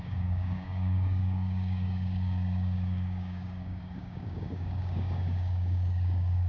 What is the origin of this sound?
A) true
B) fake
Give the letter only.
B